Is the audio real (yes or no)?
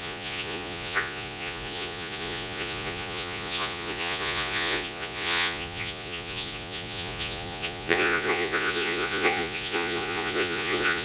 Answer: no